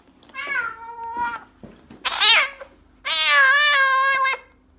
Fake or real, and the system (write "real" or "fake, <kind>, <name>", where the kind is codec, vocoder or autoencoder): real